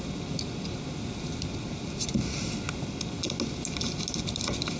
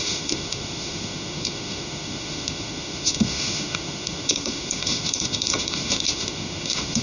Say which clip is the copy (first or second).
second